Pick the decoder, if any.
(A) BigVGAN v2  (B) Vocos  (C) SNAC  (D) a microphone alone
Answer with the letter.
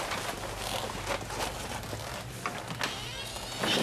D